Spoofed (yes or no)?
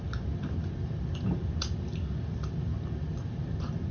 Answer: no